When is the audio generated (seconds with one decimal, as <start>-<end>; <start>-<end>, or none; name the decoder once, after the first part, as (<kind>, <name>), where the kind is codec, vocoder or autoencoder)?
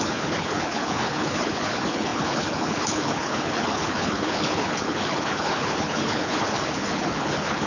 0.0-7.7 (codec, HILCodec)